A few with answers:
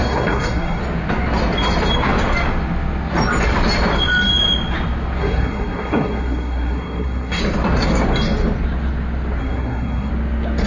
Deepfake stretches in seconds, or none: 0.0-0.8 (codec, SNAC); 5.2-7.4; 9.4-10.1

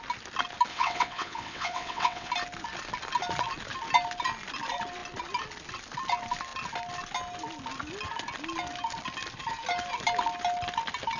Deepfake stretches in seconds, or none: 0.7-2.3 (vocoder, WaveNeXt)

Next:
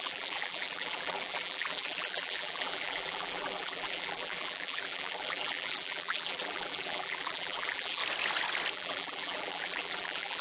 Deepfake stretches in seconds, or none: 0.0-8.0 (vocoder, BigVGAN v2); 8.7-10.4

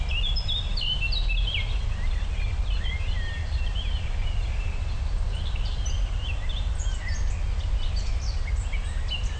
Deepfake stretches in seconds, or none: none

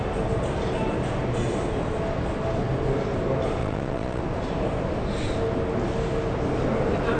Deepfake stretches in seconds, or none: 3.6-4.2 (vocoder, Vocos)